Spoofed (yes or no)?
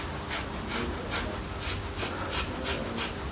no